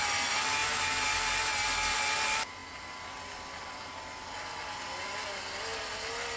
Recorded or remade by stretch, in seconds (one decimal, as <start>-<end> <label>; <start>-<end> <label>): 0.0-6.4 recorded